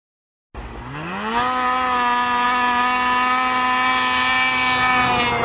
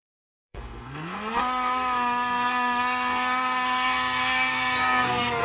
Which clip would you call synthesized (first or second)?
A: second